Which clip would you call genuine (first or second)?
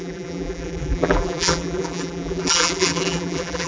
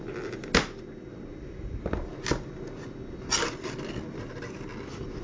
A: second